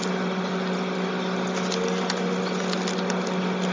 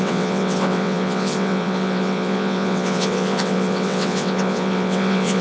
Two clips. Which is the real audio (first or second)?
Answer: first